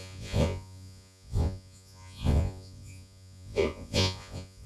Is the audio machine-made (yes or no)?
yes